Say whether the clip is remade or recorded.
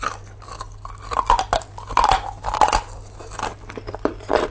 recorded